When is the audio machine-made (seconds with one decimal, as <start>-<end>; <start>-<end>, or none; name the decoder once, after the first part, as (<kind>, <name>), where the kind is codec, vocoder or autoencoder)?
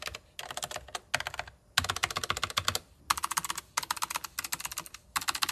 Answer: none